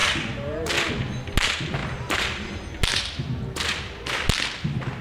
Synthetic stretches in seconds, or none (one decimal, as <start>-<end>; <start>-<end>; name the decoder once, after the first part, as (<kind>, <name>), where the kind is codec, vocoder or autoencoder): none